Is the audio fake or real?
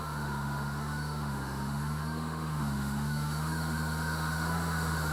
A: fake